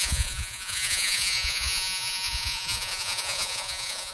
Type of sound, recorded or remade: remade